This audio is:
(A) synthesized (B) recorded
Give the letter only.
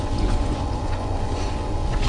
A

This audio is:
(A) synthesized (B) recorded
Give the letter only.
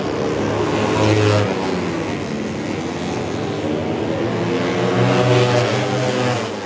B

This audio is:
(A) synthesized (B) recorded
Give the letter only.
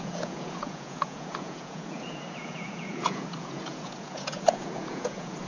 A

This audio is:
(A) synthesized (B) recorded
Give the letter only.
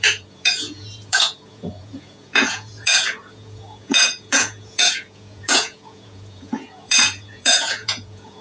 A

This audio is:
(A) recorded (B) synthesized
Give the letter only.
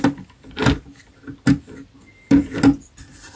A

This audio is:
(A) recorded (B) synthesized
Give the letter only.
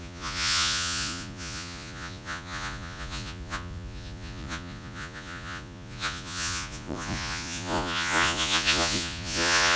B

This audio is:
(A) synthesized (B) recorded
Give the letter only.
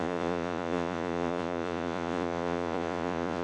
A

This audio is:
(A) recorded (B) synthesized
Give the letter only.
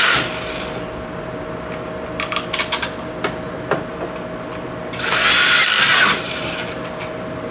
A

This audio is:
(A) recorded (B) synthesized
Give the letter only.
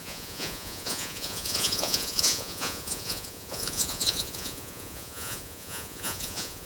B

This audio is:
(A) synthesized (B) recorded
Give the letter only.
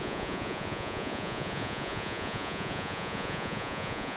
A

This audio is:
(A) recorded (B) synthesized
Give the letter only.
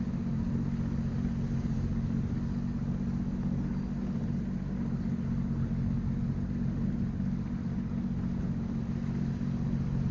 A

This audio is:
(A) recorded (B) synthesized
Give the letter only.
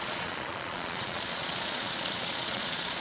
B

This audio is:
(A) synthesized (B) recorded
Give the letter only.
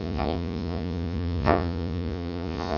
A